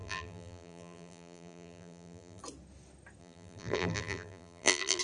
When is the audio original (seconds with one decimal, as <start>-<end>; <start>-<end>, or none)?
2.4-3.2

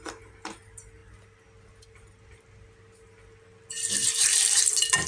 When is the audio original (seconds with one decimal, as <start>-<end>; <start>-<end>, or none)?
0.0-5.1